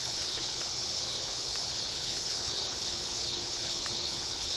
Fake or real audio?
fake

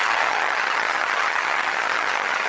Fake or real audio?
fake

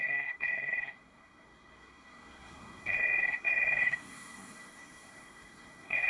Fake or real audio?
fake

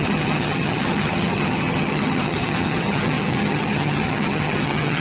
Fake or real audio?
fake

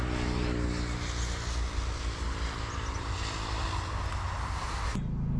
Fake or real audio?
real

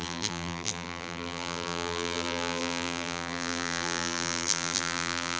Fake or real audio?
fake